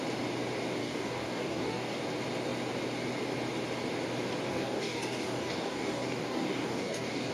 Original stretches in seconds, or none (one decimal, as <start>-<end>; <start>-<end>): 0.0-0.8; 2.0-4.5